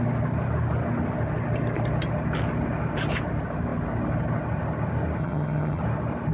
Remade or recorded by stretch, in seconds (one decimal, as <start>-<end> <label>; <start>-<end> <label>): 0.0-5.2 recorded; 5.2-5.8 remade; 5.8-6.3 recorded